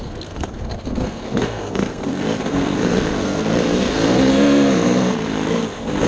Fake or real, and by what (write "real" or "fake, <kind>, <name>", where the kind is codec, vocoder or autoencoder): fake, codec, SNAC